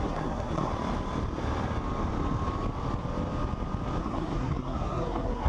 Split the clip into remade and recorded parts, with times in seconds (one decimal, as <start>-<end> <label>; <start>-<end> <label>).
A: 0.0-0.7 remade; 0.7-4.0 recorded; 4.0-5.5 remade